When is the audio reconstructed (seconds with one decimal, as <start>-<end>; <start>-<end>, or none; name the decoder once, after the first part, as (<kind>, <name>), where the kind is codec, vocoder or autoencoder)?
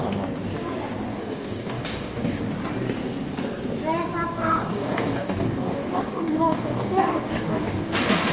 1.1-2.4 (codec, DAC); 4.4-8.3